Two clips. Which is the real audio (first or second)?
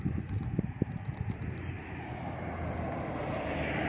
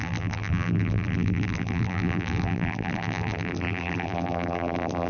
first